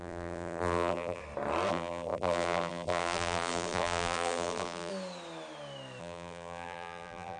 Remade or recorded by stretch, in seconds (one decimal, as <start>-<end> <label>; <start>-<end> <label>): 0.0-1.2 remade; 1.2-1.7 recorded; 1.7-4.9 remade; 4.9-6.0 recorded; 6.0-7.4 remade